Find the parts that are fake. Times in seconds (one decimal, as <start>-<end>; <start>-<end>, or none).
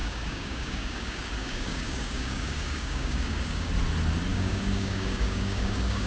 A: 0.0-3.7; 4.3-6.1